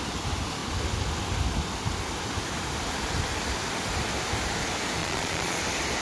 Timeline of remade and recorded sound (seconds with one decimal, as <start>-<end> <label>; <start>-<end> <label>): 0.0-5.0 recorded; 5.0-5.6 remade; 5.6-6.0 recorded